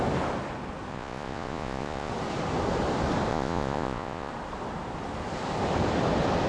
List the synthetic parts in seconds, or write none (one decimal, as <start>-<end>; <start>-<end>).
0.9-2.1; 3.3-4.3